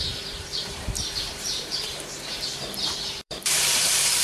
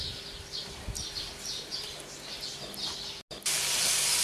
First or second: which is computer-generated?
first